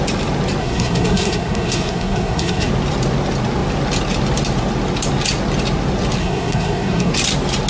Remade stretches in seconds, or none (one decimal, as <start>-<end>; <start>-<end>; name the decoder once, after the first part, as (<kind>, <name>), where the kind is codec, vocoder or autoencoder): 0.6-2.7 (codec, SNAC); 6.2-7.1